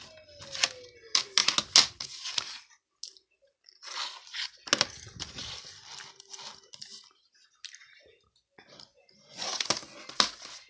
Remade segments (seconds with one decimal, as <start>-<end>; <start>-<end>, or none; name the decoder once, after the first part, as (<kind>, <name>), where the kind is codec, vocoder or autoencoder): 8.9-9.7 (vocoder, Vocos)